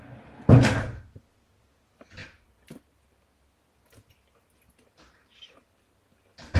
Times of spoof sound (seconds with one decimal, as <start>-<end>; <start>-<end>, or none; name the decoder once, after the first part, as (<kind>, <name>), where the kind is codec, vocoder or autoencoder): none